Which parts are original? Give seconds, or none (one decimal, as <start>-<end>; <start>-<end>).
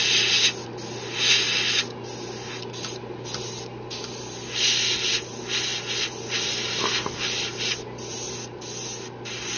0.0-9.6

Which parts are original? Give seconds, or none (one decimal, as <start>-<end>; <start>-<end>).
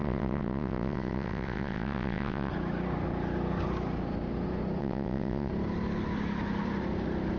2.5-4.8; 5.5-7.4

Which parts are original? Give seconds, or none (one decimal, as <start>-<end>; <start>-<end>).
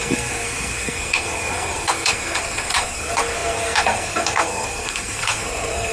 none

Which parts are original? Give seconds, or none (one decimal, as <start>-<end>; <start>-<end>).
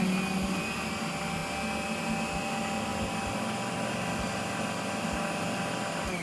0.0-6.2